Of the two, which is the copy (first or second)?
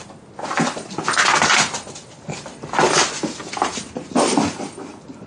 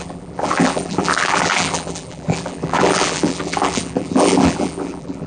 second